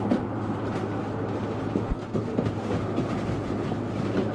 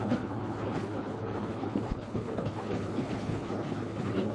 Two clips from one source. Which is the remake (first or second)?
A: second